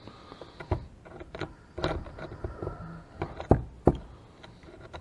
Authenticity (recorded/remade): recorded